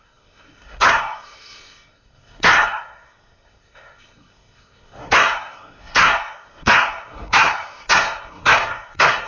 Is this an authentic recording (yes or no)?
no